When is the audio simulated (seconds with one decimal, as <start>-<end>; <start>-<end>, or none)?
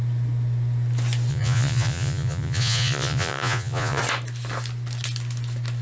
1.3-4.0